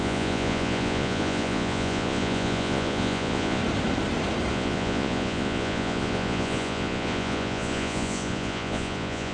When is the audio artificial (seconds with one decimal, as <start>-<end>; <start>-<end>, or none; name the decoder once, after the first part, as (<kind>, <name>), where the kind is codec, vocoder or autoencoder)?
0.0-3.6 (vocoder, Vocos); 4.5-9.3